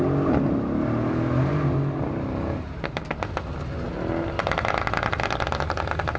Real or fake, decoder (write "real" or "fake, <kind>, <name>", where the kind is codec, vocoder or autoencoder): real